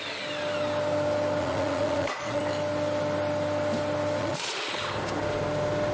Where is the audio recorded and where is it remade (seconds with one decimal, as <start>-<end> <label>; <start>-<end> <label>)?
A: 0.0-1.4 recorded; 1.4-2.4 remade; 2.4-4.2 recorded; 4.2-4.8 remade; 4.8-5.9 recorded